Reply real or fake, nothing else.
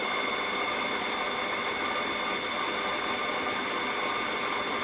real